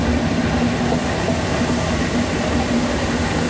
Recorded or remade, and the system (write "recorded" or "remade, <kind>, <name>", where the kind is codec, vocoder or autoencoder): recorded